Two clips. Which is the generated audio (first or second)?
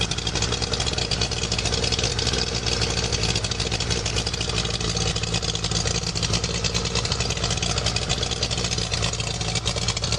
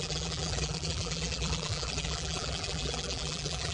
second